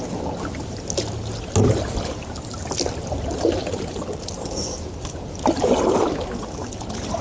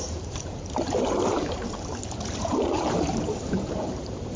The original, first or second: first